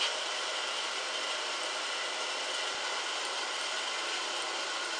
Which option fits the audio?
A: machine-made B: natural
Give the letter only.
B